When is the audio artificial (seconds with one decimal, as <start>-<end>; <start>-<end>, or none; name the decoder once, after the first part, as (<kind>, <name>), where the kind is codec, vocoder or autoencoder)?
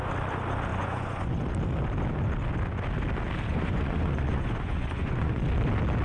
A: 0.7-1.3 (vocoder, Vocos); 3.5-5.4